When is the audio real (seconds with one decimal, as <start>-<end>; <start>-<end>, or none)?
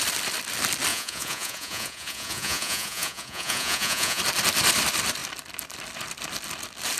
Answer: 0.0-0.9; 4.2-7.0